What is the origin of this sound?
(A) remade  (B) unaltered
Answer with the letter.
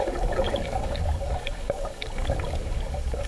A